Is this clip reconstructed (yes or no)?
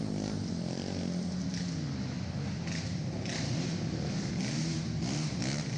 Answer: no